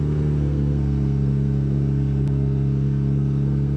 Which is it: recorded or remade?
remade